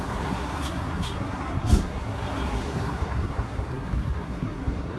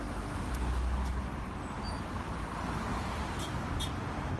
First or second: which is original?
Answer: second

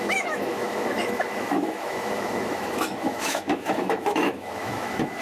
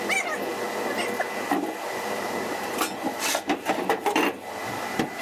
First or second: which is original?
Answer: second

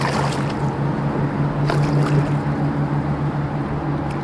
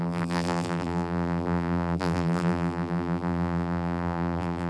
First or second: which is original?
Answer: first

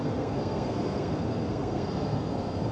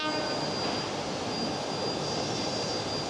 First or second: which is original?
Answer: second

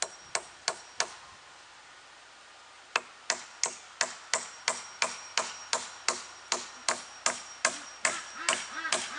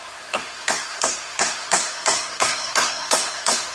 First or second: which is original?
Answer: first